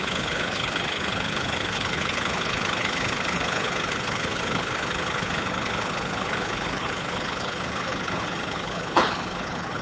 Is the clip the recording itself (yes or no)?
no